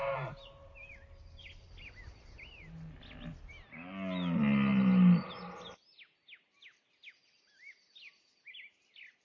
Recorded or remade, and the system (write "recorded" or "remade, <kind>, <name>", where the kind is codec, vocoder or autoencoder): recorded